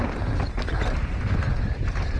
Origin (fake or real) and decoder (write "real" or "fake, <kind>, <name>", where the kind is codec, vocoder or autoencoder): real